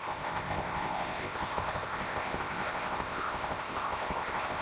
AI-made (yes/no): yes